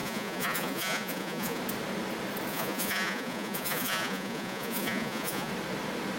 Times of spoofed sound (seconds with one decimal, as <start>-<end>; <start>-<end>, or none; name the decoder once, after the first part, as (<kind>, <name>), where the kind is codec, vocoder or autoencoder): 0.0-1.6 (vocoder, Vocos); 2.5-5.5